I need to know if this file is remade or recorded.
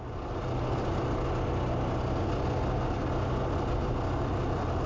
recorded